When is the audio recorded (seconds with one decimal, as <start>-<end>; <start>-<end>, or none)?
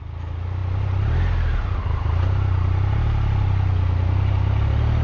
0.0-5.0